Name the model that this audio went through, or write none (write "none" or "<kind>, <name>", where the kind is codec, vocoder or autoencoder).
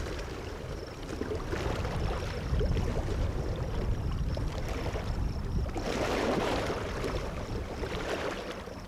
vocoder, BigVGAN v2